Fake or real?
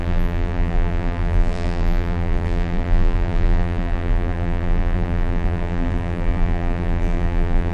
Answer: fake